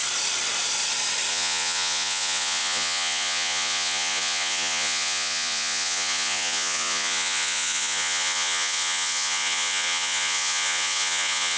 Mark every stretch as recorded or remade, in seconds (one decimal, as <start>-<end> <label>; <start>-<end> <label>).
0.0-1.3 recorded; 1.3-11.6 remade